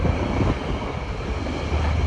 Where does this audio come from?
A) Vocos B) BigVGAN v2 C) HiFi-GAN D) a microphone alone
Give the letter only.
D